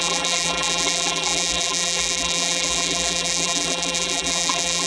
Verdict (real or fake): fake